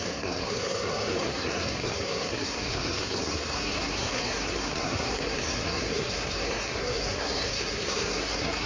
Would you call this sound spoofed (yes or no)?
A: yes